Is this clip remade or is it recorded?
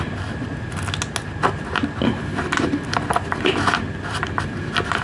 recorded